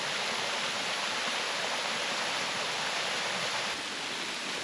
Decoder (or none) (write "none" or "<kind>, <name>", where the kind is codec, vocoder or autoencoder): none